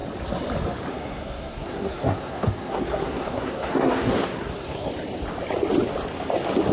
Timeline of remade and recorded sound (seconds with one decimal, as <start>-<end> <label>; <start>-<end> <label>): 0.0-0.9 recorded; 0.9-4.9 remade; 4.9-6.7 recorded